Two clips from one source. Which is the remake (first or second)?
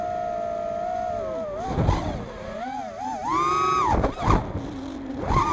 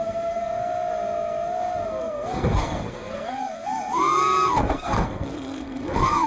second